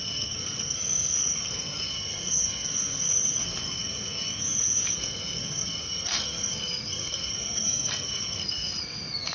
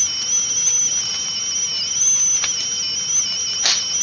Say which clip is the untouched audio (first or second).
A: second